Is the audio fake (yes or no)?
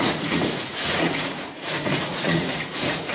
yes